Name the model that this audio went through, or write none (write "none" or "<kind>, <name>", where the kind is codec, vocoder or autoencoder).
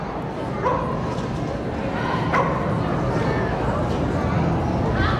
none